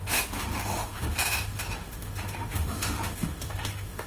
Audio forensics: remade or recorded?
remade